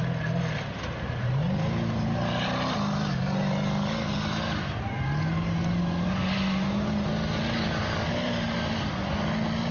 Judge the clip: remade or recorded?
recorded